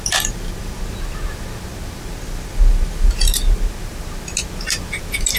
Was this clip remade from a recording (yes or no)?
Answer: no